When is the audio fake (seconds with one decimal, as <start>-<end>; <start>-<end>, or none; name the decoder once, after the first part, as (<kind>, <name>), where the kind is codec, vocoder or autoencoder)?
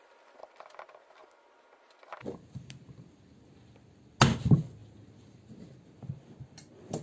none